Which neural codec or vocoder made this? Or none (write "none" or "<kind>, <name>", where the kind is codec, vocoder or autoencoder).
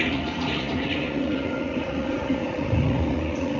vocoder, Vocos